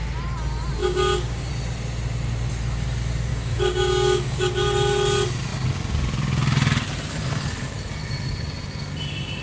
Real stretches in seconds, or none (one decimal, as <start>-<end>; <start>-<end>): 0.0-0.8; 1.5-3.3; 4.6-9.4